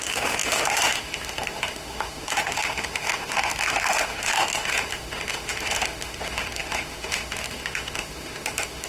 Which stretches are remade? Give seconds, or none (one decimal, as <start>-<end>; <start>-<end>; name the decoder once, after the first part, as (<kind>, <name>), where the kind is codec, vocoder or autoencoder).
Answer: 0.0-8.9 (autoencoder, DAC-VAE)